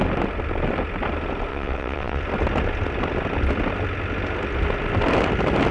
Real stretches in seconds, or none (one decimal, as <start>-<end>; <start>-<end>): 0.0-1.5; 2.2-5.7